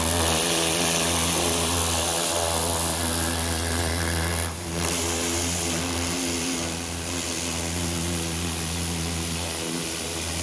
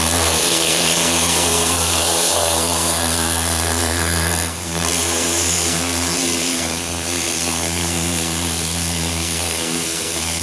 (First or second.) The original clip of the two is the first